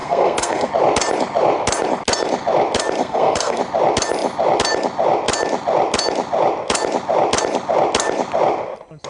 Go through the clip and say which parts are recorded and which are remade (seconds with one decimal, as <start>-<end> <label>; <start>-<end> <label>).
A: 0.0-0.7 remade; 0.7-3.0 recorded; 3.0-3.6 remade; 3.6-9.1 recorded